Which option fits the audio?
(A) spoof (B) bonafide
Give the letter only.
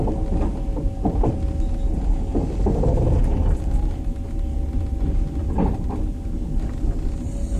B